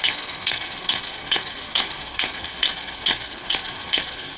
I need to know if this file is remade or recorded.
remade